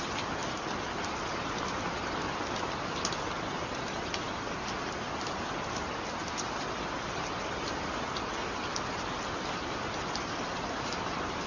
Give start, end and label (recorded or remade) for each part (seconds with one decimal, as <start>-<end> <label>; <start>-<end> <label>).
0.0-11.5 recorded